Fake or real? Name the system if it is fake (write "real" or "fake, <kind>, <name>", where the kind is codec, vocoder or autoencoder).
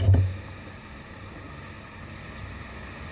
real